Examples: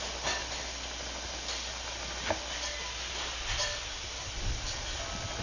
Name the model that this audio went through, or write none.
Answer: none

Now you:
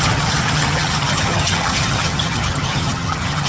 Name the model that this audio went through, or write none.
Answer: vocoder, HiFi-GAN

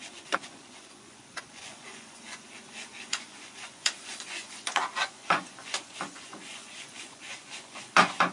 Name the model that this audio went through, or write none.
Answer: vocoder, Vocos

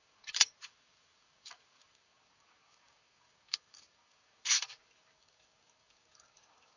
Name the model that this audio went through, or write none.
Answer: codec, DAC